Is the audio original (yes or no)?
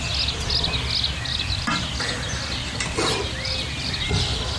yes